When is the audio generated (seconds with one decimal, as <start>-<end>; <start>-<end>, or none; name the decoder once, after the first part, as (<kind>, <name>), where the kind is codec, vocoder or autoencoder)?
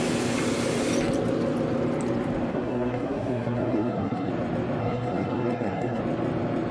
2.5-4.3 (codec, SNAC); 4.8-6.0